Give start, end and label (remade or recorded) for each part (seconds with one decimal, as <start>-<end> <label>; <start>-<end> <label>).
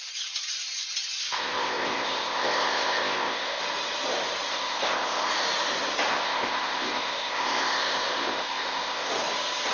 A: 0.0-1.2 recorded; 1.2-3.6 remade; 3.6-4.5 recorded; 4.5-5.3 remade; 5.3-6.1 recorded; 6.1-9.1 remade; 9.1-9.7 recorded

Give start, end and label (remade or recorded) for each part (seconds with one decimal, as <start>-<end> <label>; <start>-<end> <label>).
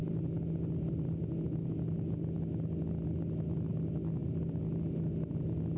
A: 0.0-5.8 recorded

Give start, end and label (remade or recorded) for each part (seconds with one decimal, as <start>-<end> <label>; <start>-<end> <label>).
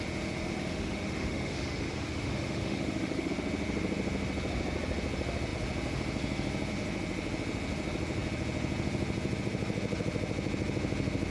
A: 0.0-0.7 recorded; 0.7-3.3 remade; 3.3-11.3 recorded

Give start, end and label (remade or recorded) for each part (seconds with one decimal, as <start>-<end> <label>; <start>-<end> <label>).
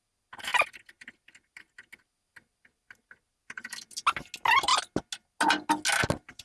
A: 0.0-6.4 recorded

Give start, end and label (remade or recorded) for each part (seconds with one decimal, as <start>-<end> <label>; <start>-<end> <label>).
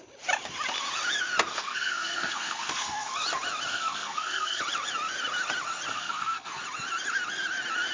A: 0.0-1.5 recorded; 1.5-3.1 remade; 3.1-3.7 recorded; 3.7-4.6 remade; 4.6-5.9 recorded; 5.9-6.6 remade; 6.6-7.9 recorded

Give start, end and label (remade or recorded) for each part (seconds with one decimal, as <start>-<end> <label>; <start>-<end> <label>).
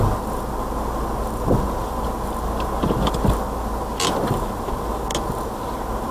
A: 0.0-6.1 recorded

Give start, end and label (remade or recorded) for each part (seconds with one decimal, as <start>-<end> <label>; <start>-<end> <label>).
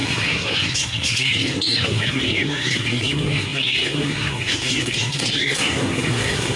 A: 0.0-6.6 remade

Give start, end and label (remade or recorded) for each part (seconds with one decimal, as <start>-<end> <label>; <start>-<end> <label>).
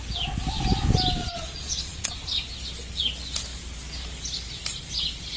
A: 0.0-1.2 recorded; 1.2-2.1 remade; 2.1-5.4 recorded